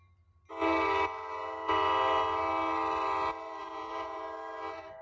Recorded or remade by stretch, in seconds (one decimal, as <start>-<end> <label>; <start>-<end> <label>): 0.0-3.6 recorded; 3.6-4.2 remade; 4.2-5.0 recorded